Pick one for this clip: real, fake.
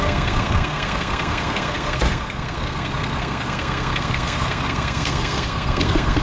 fake